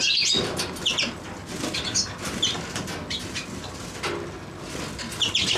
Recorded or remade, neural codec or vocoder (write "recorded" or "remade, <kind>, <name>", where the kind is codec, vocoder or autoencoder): recorded